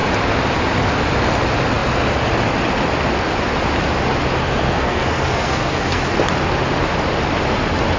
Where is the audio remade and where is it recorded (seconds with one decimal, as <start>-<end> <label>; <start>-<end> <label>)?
0.0-4.4 recorded; 4.4-6.0 remade; 6.0-8.0 recorded